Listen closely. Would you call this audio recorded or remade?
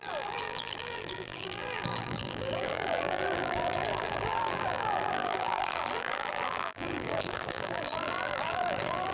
remade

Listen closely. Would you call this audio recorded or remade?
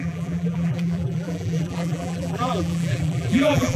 remade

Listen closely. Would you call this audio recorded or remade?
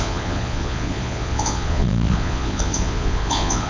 remade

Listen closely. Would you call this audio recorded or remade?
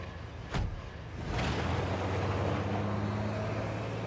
recorded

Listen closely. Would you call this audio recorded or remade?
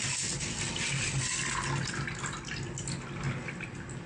recorded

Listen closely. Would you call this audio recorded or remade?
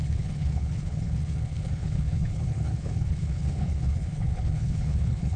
remade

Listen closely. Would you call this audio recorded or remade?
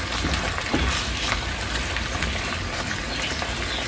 remade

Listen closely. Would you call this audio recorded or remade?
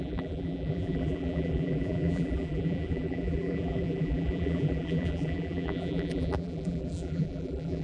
remade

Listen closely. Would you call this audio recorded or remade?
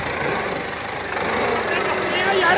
recorded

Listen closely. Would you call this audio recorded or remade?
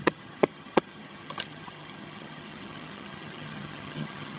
remade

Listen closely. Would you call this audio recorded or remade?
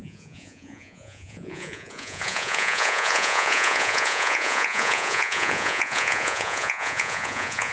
remade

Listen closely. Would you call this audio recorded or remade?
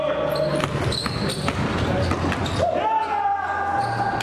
recorded